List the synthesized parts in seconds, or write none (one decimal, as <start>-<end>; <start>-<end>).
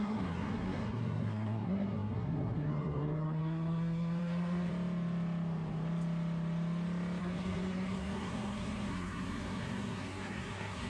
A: 0.0-4.7; 7.2-10.9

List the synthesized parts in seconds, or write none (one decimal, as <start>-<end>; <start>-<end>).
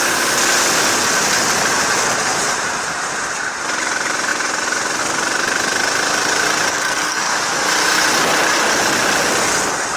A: 6.7-7.3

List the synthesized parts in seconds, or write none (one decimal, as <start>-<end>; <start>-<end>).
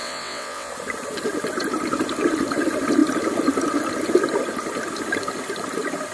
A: 0.0-0.7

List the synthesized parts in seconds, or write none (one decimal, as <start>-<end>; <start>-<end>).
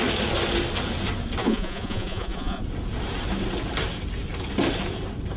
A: 1.4-2.6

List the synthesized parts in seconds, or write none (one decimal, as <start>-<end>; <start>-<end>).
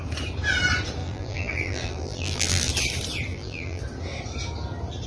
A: 1.0-2.7; 3.3-3.8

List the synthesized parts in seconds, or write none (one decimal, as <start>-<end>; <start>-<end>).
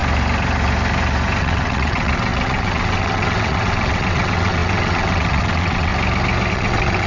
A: 1.4-5.9; 6.5-7.1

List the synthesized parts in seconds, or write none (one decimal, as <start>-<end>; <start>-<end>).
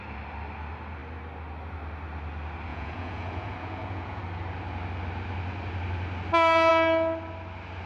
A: 2.7-4.2